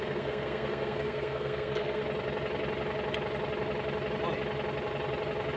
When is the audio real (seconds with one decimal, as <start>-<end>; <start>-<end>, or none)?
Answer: 2.0-5.6